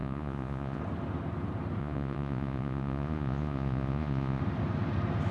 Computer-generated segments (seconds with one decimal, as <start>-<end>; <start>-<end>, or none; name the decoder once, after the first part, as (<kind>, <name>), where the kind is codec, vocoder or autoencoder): 0.0-0.8 (vocoder, Vocos); 1.8-4.4

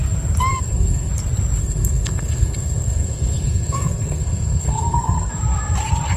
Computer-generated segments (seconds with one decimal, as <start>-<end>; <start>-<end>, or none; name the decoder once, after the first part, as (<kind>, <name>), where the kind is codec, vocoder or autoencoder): 0.5-1.1 (codec, SNAC); 1.6-5.3